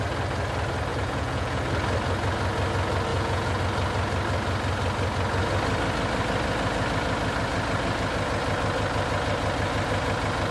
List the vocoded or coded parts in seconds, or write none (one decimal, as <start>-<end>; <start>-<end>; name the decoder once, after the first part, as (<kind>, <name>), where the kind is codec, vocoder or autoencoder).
0.9-1.6 (vocoder, Vocos); 3.1-3.6